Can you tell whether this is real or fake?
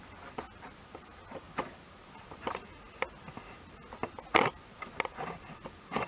real